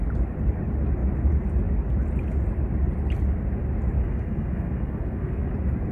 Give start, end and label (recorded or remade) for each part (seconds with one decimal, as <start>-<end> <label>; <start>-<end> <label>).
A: 0.0-4.0 recorded; 4.0-5.5 remade; 5.5-5.9 recorded